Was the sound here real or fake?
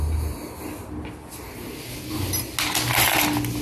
real